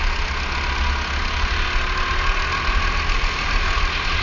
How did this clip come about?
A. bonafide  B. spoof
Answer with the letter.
A